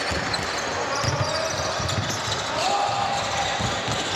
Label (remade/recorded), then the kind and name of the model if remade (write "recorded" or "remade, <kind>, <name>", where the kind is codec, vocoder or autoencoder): recorded